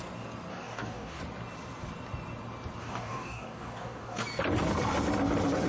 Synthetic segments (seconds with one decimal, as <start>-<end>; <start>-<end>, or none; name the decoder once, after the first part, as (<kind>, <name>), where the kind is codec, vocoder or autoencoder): 0.5-1.2 (codec, DAC); 2.8-4.2